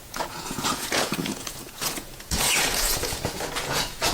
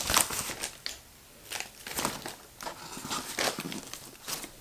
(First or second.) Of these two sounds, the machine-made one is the first